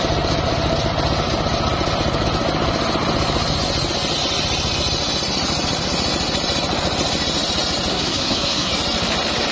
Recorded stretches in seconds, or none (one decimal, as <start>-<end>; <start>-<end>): 0.0-7.9; 8.7-9.5